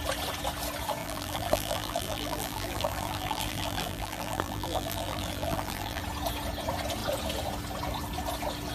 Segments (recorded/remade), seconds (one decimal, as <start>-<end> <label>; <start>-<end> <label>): 0.0-1.0 recorded; 1.0-6.0 remade; 6.0-8.7 recorded